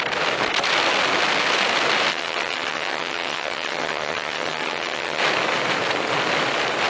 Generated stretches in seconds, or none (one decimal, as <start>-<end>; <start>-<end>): 2.1-5.2